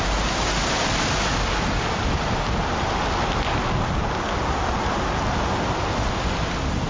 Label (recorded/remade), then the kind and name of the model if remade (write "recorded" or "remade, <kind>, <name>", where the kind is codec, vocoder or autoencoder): recorded